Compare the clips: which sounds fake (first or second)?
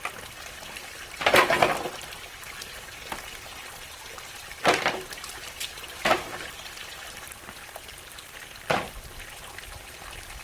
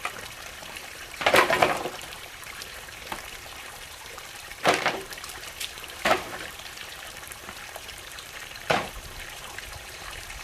second